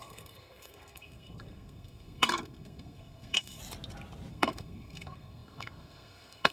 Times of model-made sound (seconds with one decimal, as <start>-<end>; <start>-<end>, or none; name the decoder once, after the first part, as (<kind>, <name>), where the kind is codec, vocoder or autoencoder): 0.0-3.6 (codec, SNAC); 4.3-6.5